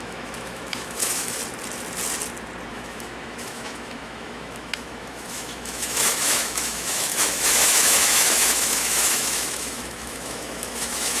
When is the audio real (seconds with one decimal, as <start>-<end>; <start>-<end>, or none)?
1.4-2.7